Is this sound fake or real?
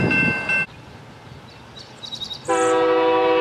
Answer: real